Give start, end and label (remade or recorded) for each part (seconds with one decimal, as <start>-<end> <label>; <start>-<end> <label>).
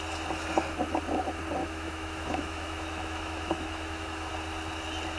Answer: 0.0-1.6 recorded; 1.6-4.3 remade; 4.3-5.2 recorded